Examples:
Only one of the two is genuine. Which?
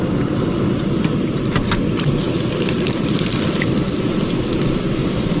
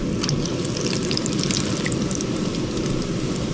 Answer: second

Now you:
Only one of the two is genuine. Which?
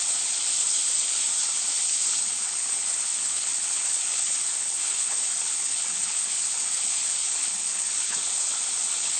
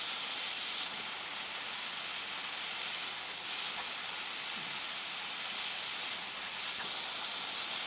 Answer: second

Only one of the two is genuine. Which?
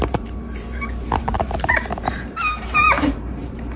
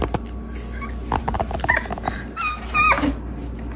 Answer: second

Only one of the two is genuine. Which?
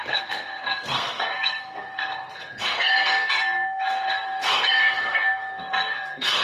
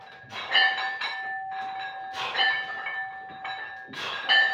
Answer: second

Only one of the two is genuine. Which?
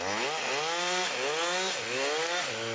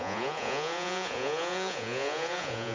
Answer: first